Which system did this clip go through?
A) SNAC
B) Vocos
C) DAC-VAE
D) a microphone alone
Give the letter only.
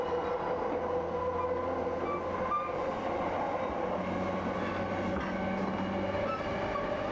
D